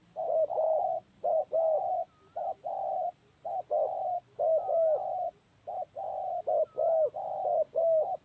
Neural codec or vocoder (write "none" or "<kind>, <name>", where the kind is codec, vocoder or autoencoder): none